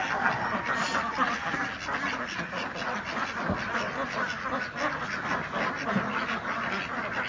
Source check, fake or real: real